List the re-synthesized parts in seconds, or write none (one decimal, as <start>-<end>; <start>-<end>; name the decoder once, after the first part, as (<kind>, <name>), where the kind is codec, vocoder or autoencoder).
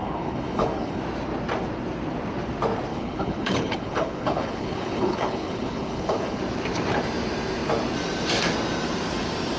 0.0-1.0 (codec, HILCodec); 2.9-6.4